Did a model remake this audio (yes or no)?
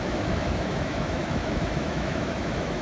yes